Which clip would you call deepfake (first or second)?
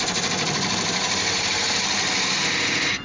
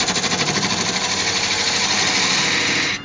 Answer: first